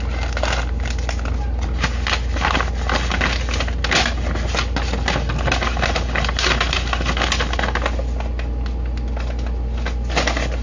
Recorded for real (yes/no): yes